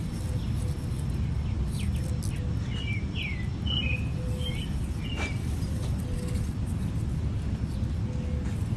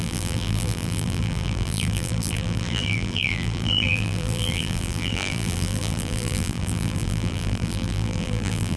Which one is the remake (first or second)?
second